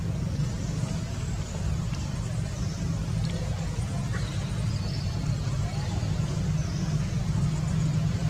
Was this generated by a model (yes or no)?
no